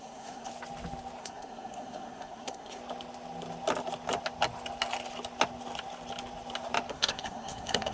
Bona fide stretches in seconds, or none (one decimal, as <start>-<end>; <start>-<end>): 0.5-1.2; 2.8-6.9